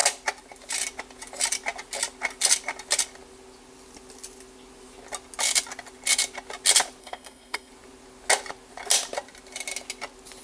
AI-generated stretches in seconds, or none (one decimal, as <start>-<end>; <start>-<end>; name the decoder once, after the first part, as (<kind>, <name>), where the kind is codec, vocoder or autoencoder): 7.0-7.7 (codec, SNAC)